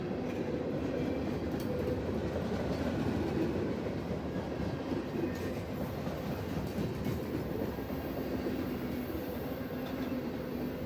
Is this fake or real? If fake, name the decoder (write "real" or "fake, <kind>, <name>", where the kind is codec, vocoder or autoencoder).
real